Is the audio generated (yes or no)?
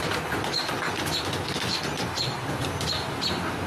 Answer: no